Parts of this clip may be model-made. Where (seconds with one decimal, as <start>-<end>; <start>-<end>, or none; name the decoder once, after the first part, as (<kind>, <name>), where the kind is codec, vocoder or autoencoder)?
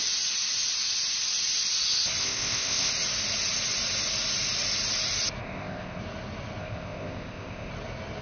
2.2-2.9 (codec, ZipCodec); 5.4-6.0; 6.6-7.7